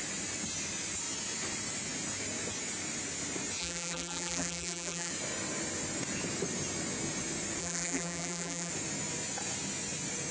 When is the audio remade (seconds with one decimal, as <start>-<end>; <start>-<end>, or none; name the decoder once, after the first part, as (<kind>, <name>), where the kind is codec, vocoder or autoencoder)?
3.6-5.1 (vocoder, BigVGAN v2); 7.6-8.7